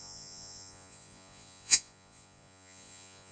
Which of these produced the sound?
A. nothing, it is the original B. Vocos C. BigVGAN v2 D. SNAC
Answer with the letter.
B